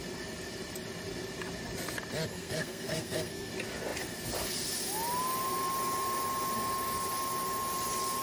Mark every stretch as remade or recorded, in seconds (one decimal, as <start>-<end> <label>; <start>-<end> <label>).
0.0-2.3 recorded; 2.3-3.5 remade; 3.5-8.2 recorded